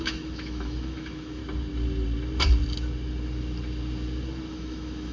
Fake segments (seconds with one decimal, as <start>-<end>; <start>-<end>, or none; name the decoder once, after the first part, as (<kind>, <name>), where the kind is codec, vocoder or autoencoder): 0.0-1.4 (autoencoder, DAC-VAE); 4.5-5.1